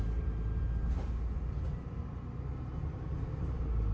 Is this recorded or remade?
recorded